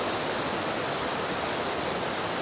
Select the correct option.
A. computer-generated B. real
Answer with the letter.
B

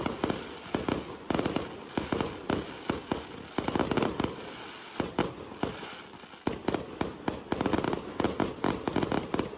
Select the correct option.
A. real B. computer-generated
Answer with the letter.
A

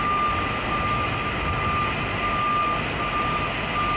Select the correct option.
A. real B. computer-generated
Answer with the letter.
A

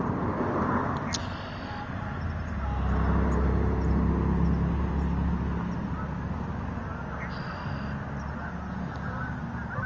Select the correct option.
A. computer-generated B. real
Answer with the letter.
B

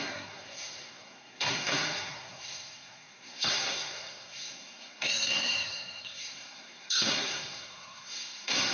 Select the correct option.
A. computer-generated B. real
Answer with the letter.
A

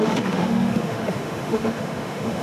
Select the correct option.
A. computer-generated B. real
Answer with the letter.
A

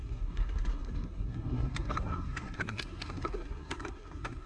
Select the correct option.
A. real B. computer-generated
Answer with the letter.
B